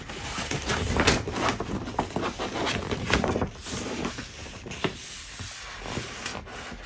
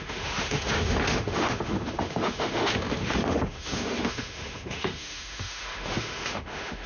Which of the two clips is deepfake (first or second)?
second